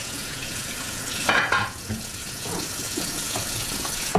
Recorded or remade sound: remade